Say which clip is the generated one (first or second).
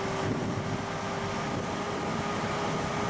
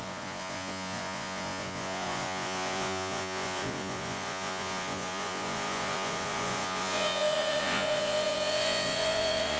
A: second